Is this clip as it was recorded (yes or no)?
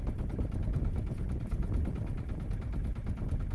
yes